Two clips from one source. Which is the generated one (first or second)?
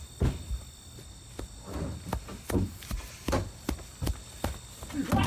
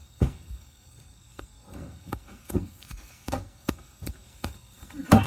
second